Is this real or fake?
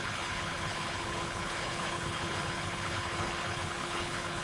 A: fake